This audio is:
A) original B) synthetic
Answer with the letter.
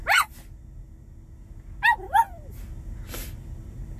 A